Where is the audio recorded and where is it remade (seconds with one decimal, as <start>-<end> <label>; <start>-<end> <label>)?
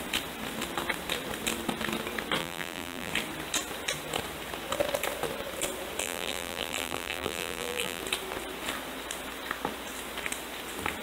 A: 0.0-2.4 recorded; 2.4-3.1 remade; 3.1-6.0 recorded; 6.0-8.0 remade; 8.0-11.0 recorded